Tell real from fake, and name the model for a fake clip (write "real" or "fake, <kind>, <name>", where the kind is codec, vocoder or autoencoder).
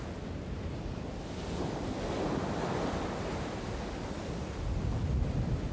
real